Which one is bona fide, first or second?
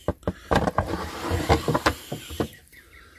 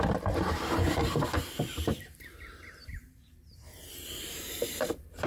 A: first